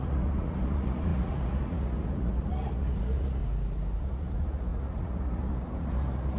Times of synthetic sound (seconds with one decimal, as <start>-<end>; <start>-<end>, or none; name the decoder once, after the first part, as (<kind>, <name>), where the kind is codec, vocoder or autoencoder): 0.0-3.4 (vocoder, Vocos); 4.0-6.4